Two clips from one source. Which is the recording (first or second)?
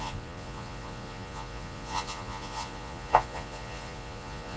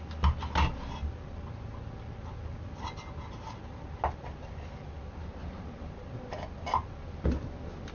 second